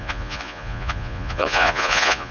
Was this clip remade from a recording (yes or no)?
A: yes